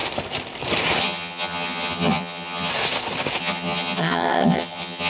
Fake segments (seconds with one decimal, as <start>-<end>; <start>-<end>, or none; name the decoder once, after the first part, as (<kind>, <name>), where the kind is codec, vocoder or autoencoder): 1.0-2.7 (vocoder, HiFi-GAN); 3.4-5.1